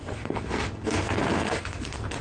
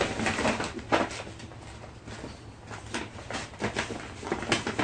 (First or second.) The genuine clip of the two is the second